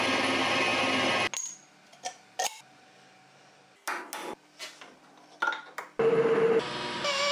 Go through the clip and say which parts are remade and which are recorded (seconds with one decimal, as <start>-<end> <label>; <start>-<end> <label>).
0.0-7.3 recorded